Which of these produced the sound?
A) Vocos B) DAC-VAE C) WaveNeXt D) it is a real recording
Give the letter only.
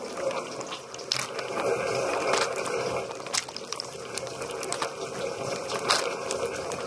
D